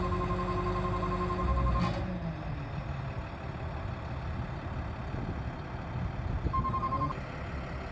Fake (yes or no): no